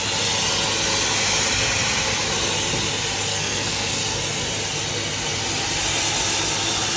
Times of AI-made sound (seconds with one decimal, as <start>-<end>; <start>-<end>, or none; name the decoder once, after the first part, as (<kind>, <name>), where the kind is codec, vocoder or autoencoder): 3.3-3.9 (codec, SNAC)